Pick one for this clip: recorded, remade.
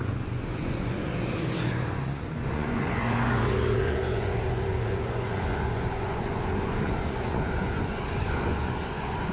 remade